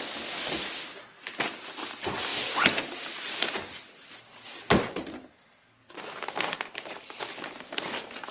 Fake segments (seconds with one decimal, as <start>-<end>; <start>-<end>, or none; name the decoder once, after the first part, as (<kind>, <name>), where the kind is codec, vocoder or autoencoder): none